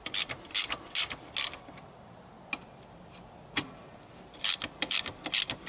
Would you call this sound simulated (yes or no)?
no